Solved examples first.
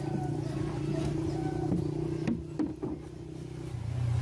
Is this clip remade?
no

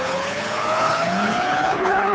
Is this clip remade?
yes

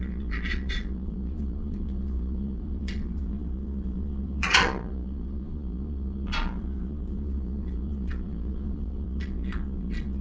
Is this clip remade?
yes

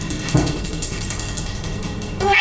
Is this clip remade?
yes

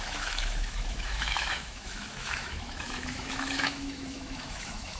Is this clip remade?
yes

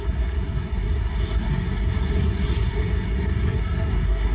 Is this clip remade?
yes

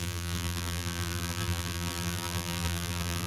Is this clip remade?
yes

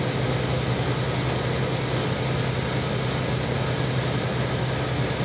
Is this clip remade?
no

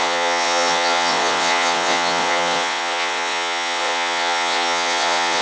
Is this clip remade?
yes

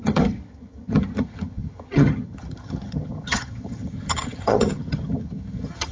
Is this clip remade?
yes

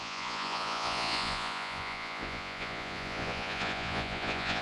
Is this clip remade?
yes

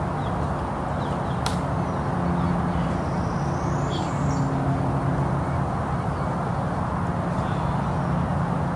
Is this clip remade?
no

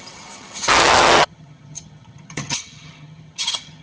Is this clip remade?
yes